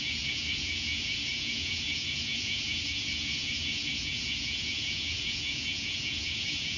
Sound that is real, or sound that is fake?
fake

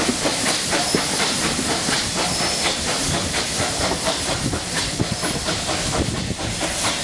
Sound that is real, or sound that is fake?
fake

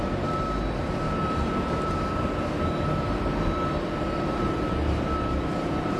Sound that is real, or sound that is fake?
fake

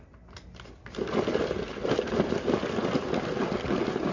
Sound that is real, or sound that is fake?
real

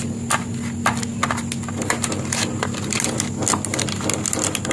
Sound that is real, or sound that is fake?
real